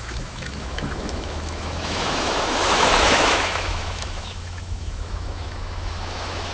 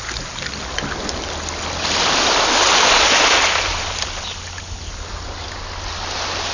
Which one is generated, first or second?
first